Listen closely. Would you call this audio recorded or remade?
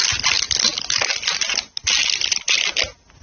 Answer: recorded